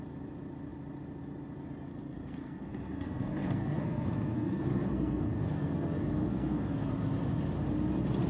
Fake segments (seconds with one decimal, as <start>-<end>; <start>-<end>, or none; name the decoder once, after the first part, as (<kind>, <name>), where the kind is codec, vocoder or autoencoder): 1.9-6.9 (codec, SNAC)